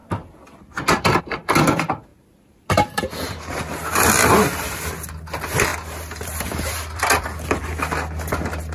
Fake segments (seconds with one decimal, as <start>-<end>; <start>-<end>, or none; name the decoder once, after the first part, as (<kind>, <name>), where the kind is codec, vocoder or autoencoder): none